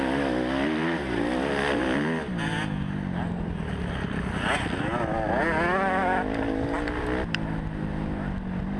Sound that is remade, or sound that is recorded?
recorded